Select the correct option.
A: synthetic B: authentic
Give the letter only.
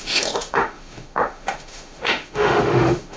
A